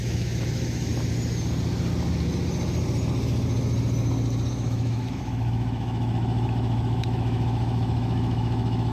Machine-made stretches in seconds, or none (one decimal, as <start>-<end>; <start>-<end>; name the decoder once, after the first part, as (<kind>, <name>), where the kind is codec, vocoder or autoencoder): 0.0-0.9 (autoencoder, DAC-VAE); 4.5-8.9